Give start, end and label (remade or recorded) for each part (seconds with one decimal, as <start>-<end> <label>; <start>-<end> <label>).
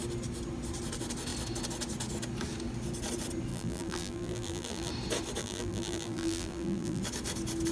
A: 0.0-3.5 recorded; 3.5-4.9 remade; 4.9-5.4 recorded; 5.4-7.0 remade; 7.0-7.7 recorded